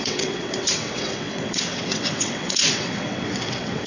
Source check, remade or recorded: remade